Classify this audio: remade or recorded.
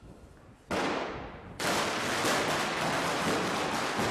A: recorded